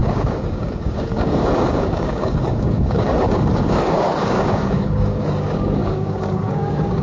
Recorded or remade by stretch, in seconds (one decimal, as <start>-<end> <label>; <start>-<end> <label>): 0.0-7.0 remade